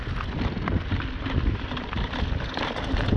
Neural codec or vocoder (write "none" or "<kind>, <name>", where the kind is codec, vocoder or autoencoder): none